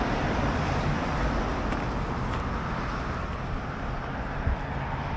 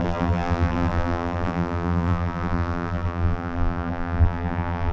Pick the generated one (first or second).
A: second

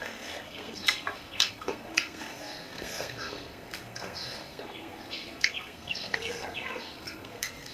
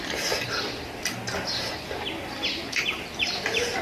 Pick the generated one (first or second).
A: first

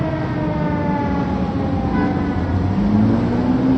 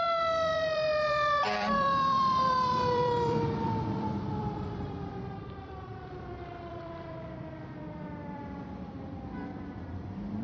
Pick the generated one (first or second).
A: second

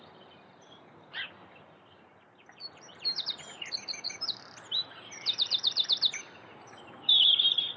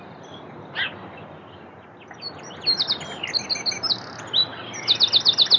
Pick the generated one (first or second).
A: first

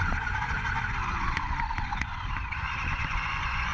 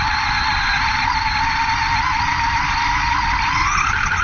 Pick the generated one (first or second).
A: first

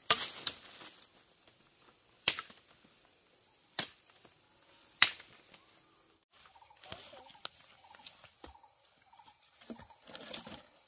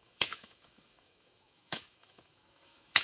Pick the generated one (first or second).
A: second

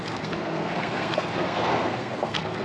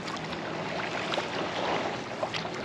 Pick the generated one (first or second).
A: first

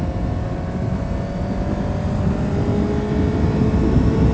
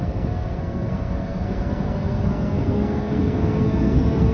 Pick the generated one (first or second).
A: second